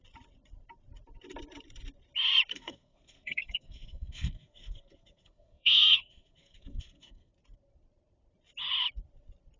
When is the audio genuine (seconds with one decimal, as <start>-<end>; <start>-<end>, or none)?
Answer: 0.0-2.5; 7.3-9.6